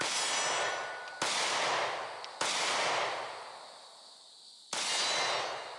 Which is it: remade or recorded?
recorded